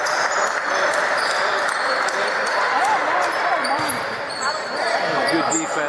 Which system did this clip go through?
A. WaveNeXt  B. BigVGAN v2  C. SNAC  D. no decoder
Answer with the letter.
B